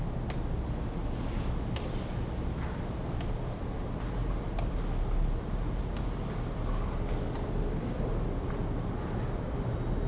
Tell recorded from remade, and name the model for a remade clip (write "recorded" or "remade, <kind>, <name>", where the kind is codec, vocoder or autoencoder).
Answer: recorded